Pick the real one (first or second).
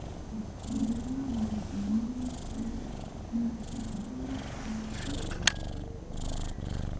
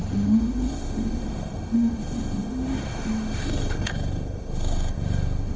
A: first